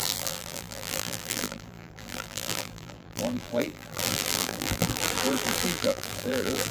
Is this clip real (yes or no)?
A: no